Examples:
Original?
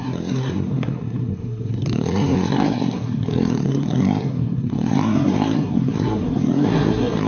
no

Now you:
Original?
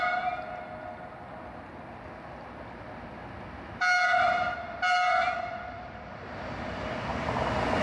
yes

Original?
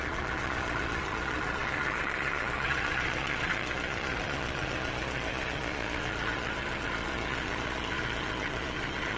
no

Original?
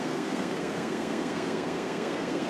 no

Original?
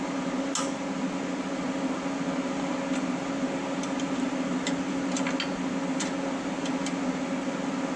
yes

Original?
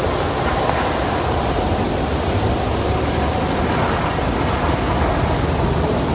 yes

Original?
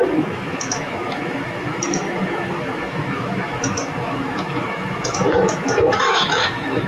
no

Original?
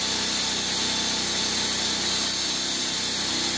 yes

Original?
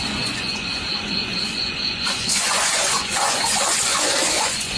no